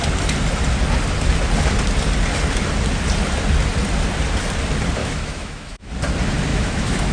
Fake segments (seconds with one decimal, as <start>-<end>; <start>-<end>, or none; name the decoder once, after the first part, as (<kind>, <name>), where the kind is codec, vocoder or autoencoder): 5.0-5.9 (autoencoder, DAC-VAE); 6.5-7.1

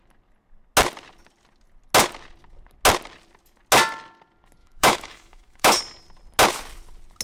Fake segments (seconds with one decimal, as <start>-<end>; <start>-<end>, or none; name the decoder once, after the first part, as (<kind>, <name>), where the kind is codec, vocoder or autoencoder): 4.6-5.8 (autoencoder, DAC-VAE)

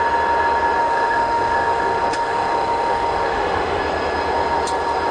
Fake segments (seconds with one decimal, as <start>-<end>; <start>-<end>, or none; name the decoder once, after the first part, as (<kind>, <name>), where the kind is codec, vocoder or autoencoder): 0.8-3.8 (autoencoder, DAC-VAE)

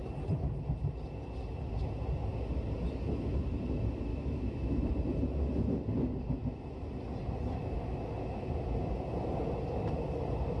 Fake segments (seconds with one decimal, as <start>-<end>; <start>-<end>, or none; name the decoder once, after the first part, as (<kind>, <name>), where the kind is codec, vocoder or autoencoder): 4.1-4.9 (autoencoder, DAC-VAE)

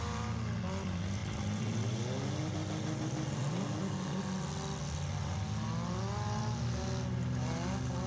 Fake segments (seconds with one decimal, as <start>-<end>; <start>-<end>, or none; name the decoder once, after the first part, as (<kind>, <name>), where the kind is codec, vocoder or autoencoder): none

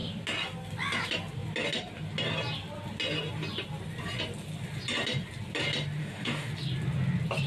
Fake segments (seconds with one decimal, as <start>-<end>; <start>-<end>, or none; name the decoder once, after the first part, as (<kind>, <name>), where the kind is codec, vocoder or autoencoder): 6.0-6.5 (autoencoder, DAC-VAE)

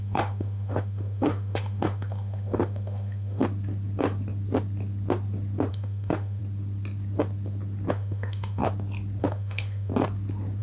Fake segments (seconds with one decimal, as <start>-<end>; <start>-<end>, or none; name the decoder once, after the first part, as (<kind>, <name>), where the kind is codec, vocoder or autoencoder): 0.0-3.4 (autoencoder, DAC-VAE); 5.7-6.4; 7.9-8.6; 9.2-9.9

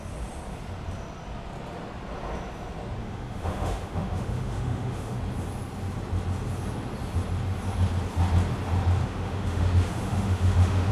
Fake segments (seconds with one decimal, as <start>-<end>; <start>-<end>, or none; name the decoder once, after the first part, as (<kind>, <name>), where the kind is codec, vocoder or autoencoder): 3.0-5.2 (autoencoder, DAC-VAE); 9.0-10.9